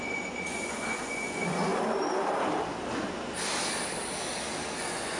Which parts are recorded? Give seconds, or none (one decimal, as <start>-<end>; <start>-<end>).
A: 1.7-4.8